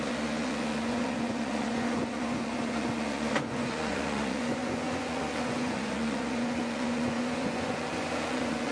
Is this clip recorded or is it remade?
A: remade